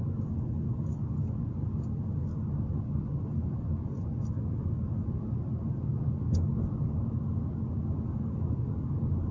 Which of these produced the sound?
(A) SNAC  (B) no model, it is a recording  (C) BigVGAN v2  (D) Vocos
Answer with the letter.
B